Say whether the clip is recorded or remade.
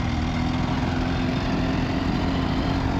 recorded